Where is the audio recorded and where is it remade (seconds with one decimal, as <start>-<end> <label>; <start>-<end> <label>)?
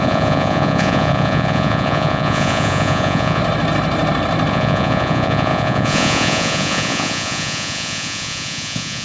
0.0-3.4 remade; 3.4-4.5 recorded; 4.5-9.0 remade